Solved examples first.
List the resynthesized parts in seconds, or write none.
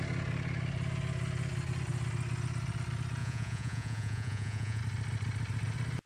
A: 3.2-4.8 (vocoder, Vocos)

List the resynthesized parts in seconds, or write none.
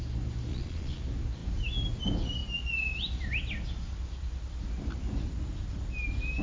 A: 0.5-1.0 (vocoder, Vocos)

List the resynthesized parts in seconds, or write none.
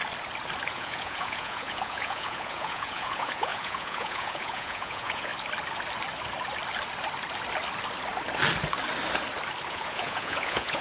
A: 0.7-5.3 (vocoder, Vocos); 9.7-10.8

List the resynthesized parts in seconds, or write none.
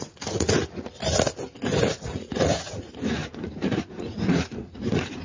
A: 0.0-0.6 (vocoder, Vocos); 1.9-5.2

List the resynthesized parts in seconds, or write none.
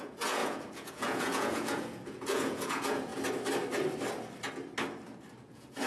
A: 0.0-3.1 (vocoder, Vocos); 5.4-5.9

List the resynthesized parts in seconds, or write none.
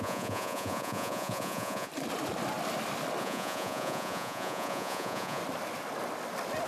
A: 0.0-1.9 (vocoder, Vocos); 3.2-5.4